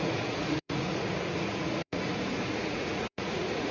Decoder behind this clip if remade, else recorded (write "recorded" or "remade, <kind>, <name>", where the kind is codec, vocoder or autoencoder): remade, vocoder, Vocos